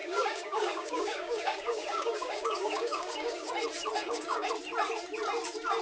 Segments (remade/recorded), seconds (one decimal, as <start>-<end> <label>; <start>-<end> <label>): 0.0-3.5 remade; 3.5-4.0 recorded; 4.0-4.5 remade; 4.5-5.8 recorded